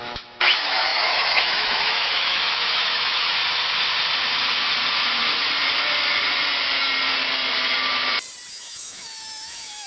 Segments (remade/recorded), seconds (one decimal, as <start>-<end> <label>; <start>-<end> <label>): 0.0-3.4 remade; 3.4-8.5 recorded; 8.5-9.9 remade